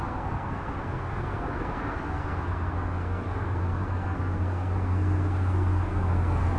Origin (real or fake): fake